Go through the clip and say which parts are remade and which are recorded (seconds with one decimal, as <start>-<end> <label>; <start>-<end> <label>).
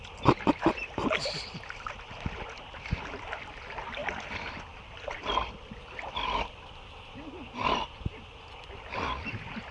0.0-9.7 recorded